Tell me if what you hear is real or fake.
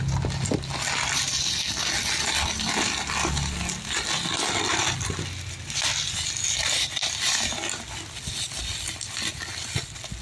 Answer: real